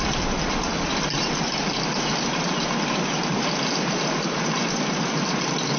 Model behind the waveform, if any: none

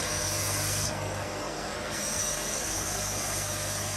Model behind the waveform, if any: codec, SNAC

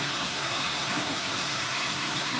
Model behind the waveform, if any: codec, SNAC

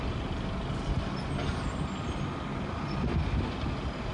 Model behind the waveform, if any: none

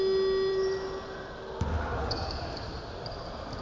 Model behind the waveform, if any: none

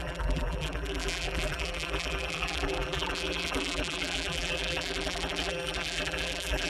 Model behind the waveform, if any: vocoder, BigVGAN v2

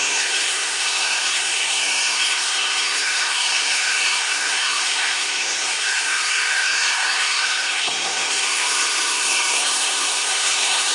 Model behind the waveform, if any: codec, SNAC